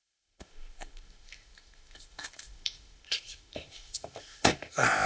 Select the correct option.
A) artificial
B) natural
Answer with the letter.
A